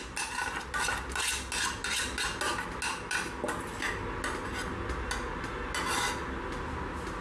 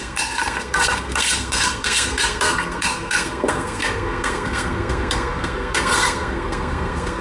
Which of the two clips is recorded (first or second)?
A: first